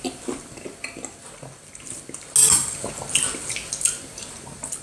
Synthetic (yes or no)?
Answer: no